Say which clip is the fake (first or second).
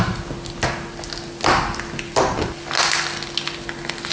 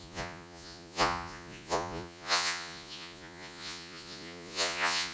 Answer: second